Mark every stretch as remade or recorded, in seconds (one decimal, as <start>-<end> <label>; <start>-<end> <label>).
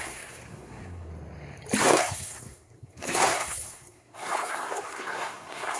0.0-1.1 remade; 1.1-1.8 recorded; 1.8-5.8 remade